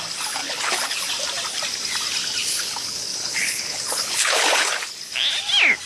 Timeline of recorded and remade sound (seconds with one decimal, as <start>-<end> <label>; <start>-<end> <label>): 0.0-0.4 recorded; 0.4-1.0 remade; 1.0-2.4 recorded; 2.4-5.0 remade; 5.0-5.9 recorded